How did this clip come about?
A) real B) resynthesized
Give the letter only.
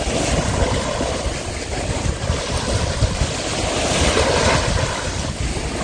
A